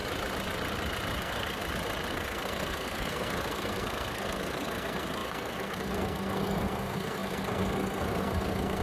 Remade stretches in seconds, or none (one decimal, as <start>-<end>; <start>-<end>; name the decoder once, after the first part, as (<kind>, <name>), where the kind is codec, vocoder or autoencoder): 1.2-1.6 (codec, SNAC); 2.1-8.8